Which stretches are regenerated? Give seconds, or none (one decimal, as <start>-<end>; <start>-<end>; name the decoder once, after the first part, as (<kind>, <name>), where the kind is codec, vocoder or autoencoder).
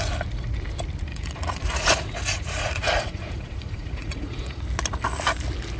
1.1-4.6 (vocoder, Vocos)